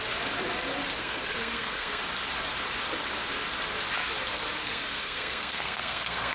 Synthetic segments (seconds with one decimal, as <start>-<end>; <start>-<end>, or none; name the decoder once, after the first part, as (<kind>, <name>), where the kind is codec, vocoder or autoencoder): 1.0-2.0 (codec, SNAC); 4.6-6.3